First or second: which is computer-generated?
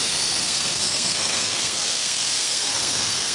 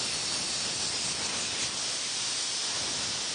first